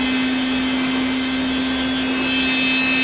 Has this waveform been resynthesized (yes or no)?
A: no